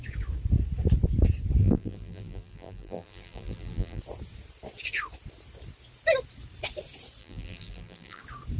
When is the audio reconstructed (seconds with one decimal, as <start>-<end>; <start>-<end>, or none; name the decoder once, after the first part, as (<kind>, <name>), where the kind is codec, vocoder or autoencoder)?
1.6-4.0 (vocoder, BigVGAN v2); 7.2-8.2